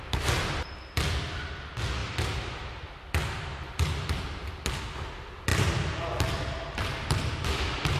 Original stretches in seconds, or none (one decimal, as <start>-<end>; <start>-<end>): 0.0-8.0